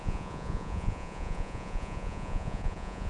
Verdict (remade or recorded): remade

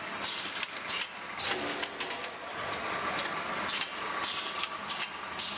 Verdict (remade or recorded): recorded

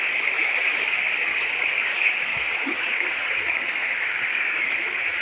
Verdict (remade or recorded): remade